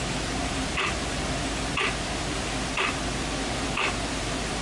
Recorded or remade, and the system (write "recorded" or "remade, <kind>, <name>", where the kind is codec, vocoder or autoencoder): remade, vocoder, BigVGAN v2